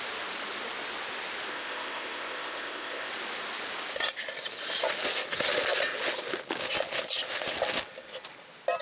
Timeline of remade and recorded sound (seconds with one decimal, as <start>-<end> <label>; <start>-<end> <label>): 0.0-1.5 recorded; 1.5-3.1 remade; 3.1-8.8 recorded